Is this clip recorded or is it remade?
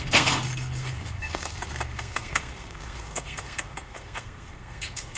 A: remade